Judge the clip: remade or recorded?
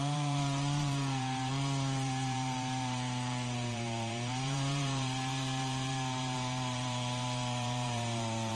remade